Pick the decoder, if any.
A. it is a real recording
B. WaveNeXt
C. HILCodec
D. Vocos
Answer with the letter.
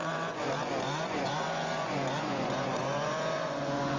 D